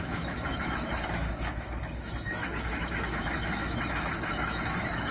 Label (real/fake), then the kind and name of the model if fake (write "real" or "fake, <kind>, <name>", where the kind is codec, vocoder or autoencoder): fake, autoencoder, DAC-VAE